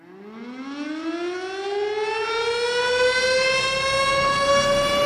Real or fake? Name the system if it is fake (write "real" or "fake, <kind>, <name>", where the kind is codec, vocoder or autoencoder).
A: real